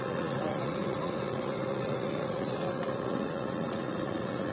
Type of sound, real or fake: fake